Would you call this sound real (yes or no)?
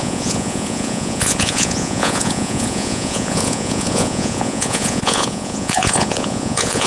no